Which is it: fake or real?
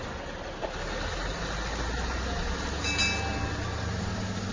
real